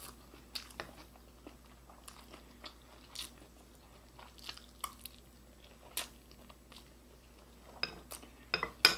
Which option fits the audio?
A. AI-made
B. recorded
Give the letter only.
B